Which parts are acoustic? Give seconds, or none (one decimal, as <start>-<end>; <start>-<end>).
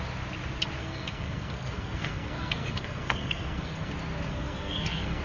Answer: 0.0-0.8; 3.9-4.3